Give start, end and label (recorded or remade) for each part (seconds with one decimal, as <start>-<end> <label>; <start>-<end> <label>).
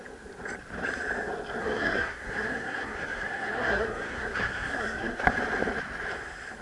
0.0-1.6 recorded; 1.6-5.3 remade; 5.3-6.6 recorded